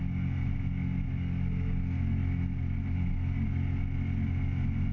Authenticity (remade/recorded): recorded